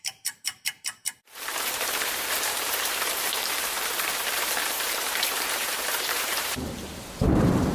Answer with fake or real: fake